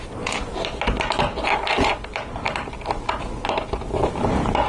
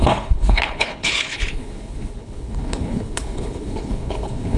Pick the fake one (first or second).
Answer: second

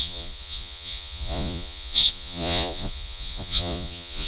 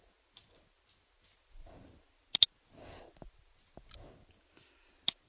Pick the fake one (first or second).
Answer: first